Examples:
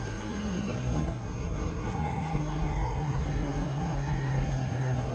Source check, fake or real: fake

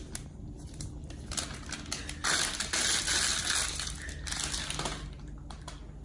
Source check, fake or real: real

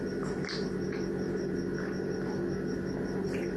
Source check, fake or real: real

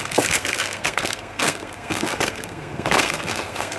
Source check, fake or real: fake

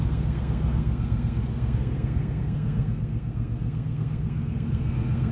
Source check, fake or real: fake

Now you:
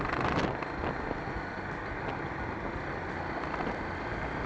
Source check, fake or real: real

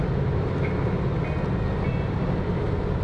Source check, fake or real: real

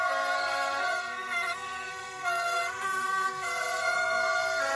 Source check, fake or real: fake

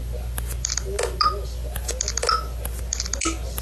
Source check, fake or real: real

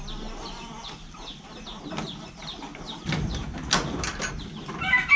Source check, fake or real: real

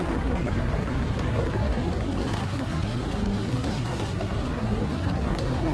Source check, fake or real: fake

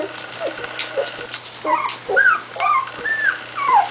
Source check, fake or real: real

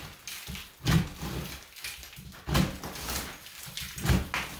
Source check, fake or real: real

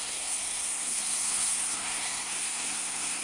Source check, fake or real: fake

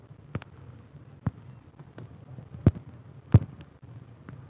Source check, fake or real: real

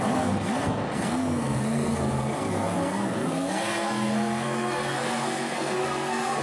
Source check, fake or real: fake